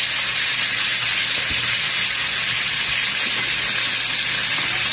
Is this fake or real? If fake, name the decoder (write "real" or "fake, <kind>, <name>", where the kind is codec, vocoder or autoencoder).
real